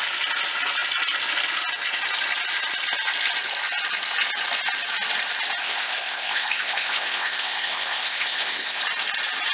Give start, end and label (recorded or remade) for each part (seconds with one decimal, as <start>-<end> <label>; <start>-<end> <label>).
0.0-5.6 recorded; 5.6-8.8 remade; 8.8-9.5 recorded